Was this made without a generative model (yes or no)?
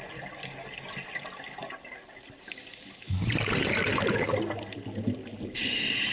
yes